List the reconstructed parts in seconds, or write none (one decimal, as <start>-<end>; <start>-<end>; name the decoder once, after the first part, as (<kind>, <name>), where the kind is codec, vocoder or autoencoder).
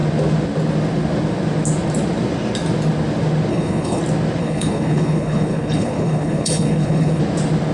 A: 3.5-4.0 (codec, HILCodec); 4.4-7.2